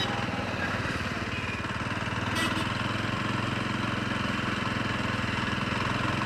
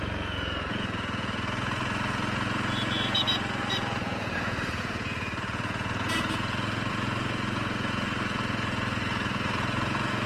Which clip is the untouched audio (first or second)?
first